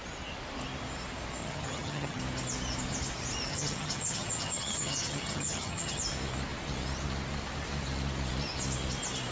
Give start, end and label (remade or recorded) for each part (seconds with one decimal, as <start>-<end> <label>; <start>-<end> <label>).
0.0-1.4 recorded; 1.4-2.2 remade; 2.2-3.5 recorded; 3.5-6.0 remade; 6.0-9.3 recorded